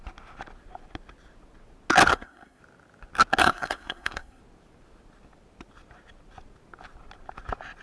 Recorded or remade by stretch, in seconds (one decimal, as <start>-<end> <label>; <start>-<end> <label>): 0.0-2.1 recorded; 2.1-2.6 remade; 2.6-3.4 recorded; 3.4-4.4 remade; 4.4-7.8 recorded